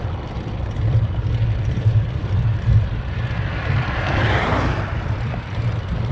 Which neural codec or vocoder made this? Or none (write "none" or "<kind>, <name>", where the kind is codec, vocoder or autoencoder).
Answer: vocoder, BigVGAN v2